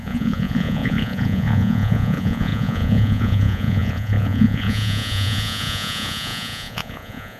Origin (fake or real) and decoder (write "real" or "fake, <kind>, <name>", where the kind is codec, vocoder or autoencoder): fake, vocoder, Vocos